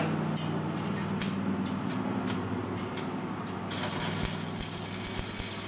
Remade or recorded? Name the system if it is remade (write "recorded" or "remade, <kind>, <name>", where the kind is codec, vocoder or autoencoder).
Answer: recorded